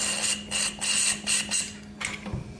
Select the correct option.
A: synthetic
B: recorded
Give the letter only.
B